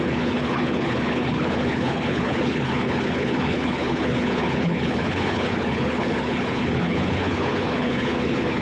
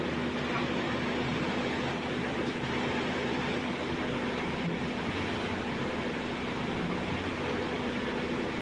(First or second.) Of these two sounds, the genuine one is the second